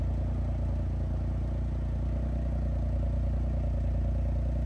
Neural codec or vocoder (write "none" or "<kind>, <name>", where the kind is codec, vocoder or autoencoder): none